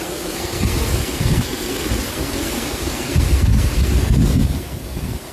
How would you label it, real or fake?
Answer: fake